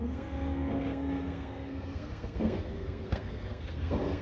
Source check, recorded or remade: remade